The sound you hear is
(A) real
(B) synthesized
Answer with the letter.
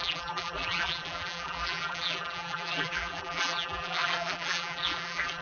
B